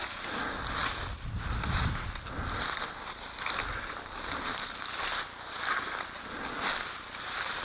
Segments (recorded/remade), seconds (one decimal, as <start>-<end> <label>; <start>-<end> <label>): 0.0-7.6 recorded